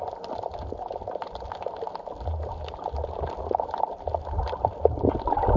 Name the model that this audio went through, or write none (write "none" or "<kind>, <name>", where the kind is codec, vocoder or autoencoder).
none